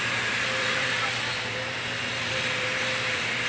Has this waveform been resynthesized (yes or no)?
yes